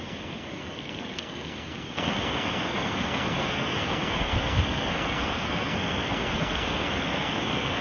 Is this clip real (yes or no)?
no